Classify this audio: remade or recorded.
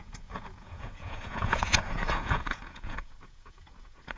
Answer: remade